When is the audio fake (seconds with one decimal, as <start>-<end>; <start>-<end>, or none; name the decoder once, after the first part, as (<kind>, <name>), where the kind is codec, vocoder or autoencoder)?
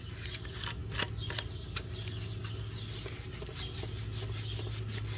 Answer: none